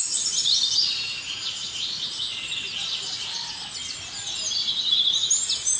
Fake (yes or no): no